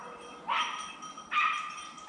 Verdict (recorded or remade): recorded